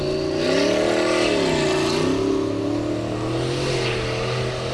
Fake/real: real